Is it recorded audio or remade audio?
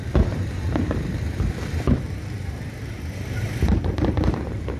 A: remade